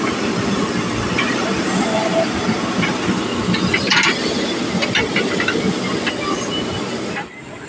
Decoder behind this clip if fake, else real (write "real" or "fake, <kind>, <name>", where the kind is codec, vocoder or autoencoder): real